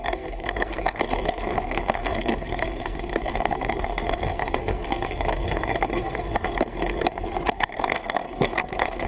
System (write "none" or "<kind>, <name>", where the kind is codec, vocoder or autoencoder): codec, SNAC